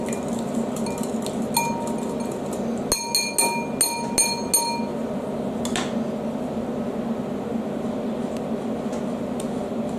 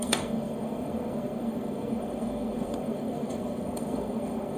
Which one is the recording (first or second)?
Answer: first